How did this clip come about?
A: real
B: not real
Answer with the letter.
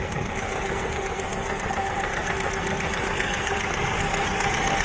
B